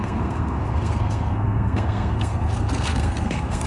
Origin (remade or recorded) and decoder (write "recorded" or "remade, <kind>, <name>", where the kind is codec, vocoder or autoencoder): remade, codec, SNAC